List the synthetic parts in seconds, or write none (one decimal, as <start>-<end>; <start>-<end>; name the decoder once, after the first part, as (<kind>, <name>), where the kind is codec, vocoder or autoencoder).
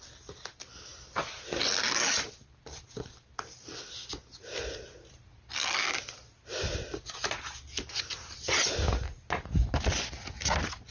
none